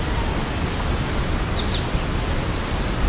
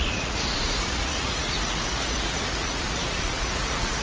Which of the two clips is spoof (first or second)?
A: second